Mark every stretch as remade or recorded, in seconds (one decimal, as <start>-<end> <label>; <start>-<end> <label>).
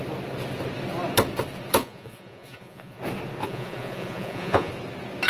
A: 0.0-1.8 recorded; 1.8-3.0 remade; 3.0-3.4 recorded; 3.4-4.7 remade; 4.7-5.3 recorded